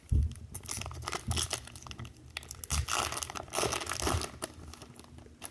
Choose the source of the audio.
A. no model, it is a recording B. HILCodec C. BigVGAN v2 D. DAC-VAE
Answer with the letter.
A